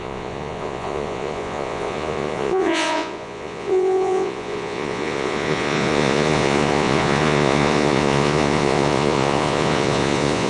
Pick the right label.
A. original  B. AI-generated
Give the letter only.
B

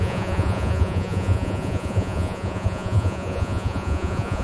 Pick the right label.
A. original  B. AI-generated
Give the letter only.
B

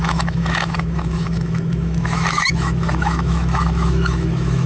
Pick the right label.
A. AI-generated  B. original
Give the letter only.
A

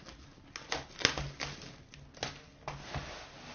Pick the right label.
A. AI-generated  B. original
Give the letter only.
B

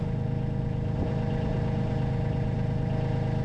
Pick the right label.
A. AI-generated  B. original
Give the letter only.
B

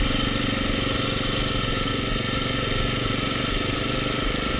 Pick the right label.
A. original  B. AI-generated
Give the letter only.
A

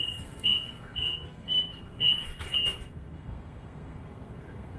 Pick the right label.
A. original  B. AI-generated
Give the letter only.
B